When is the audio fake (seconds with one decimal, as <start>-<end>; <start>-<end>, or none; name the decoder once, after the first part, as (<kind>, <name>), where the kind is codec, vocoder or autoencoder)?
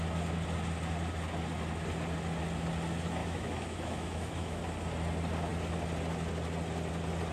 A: 3.2-4.6 (autoencoder, DAC-VAE)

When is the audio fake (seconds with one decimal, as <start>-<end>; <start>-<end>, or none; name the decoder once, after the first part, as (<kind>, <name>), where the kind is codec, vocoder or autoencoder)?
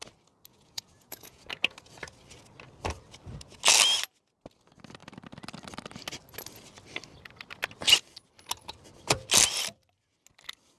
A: 0.5-1.5 (vocoder, Vocos)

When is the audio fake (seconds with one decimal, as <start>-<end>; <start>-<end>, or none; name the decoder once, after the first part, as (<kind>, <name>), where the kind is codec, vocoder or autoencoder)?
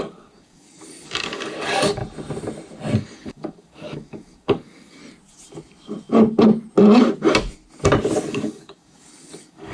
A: 0.0-2.0 (codec, DAC); 3.0-5.0; 8.3-9.7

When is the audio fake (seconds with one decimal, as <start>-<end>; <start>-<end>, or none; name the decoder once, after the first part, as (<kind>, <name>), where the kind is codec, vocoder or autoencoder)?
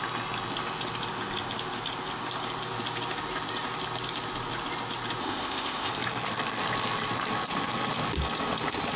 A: 5.2-5.9 (codec, ZipCodec)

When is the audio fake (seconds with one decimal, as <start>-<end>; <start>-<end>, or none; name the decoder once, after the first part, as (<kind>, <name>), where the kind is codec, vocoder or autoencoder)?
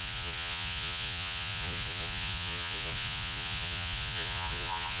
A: 0.0-5.0 (vocoder, Vocos)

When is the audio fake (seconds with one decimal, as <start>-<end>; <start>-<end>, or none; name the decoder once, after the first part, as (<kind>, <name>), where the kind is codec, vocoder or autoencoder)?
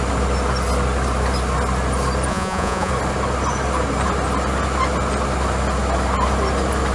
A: 2.3-2.9 (vocoder, Vocos)